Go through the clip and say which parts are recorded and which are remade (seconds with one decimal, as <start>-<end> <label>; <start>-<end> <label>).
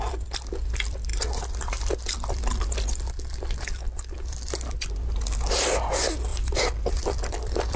0.0-1.1 recorded; 1.1-4.9 remade; 4.9-6.3 recorded; 6.3-7.8 remade